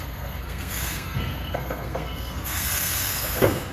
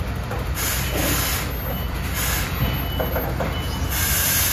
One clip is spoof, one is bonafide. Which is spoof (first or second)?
first